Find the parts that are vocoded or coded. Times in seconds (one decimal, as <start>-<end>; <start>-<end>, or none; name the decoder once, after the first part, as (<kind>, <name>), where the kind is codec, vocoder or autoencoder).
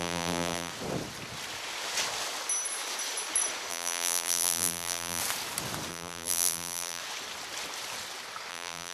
0.0-0.7 (vocoder, BigVGAN v2); 3.7-5.2; 5.9-7.0; 8.5-8.9